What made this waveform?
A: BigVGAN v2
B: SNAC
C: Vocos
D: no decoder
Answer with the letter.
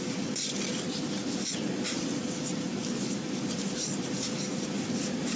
D